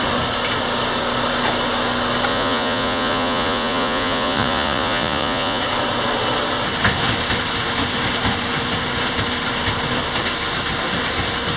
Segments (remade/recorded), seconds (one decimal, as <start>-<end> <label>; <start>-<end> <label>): 0.0-2.3 recorded; 2.3-5.6 remade; 5.6-11.6 recorded